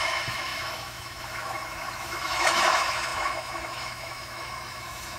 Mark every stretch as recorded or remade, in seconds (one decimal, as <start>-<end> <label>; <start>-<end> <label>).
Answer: 0.0-5.2 remade